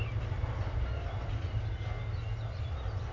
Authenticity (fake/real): real